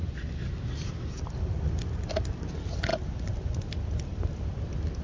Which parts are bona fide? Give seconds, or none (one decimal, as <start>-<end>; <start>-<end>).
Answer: 0.0-5.0